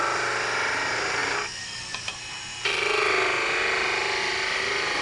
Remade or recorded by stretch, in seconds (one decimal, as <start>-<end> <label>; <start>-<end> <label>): 0.0-5.0 recorded